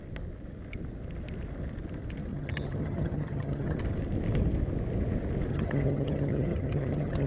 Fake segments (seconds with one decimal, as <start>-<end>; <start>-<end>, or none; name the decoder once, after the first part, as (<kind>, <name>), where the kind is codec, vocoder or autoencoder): 2.3-3.8 (vocoder, HiFi-GAN); 5.5-7.3

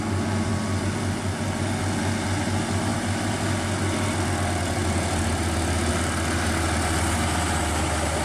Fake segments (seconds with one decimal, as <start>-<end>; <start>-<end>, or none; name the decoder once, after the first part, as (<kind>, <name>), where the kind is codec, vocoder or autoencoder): 2.9-3.8 (vocoder, BigVGAN v2)

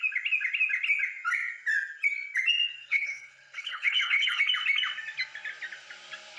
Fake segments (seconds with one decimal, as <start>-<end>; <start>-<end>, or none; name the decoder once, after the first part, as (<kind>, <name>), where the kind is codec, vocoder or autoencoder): 2.8-4.4 (codec, HILCodec)

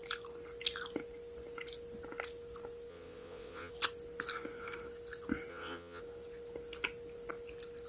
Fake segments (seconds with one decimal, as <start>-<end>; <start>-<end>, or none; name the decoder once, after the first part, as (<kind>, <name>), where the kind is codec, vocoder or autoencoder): 2.9-3.7 (vocoder, WaveNeXt); 5.5-6.0

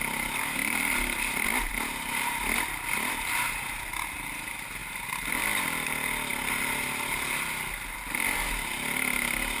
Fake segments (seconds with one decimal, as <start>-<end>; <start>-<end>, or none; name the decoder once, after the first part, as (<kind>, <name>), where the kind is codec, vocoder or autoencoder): none